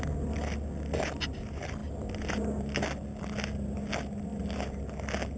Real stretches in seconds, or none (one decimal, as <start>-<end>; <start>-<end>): 0.0-5.4